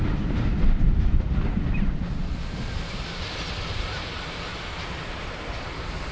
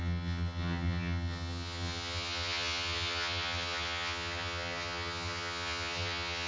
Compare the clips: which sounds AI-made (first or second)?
second